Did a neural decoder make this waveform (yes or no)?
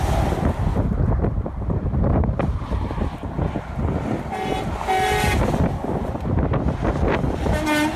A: no